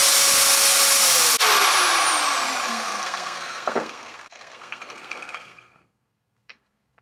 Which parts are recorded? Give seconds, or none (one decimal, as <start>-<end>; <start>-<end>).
0.0-2.7